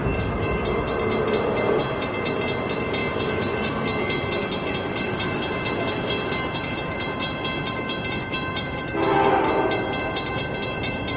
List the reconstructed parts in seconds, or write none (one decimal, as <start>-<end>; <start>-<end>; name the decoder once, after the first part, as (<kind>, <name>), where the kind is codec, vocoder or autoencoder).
none